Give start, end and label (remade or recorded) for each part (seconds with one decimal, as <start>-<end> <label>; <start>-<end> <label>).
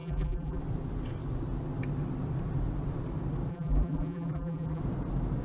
0.0-0.6 remade; 0.6-3.5 recorded; 3.5-4.8 remade; 4.8-5.4 recorded